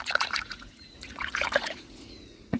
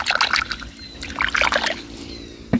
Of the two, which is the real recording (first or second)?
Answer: second